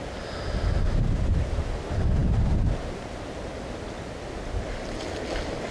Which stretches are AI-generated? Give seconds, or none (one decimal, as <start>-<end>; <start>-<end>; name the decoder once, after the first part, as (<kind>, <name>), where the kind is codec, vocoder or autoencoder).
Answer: none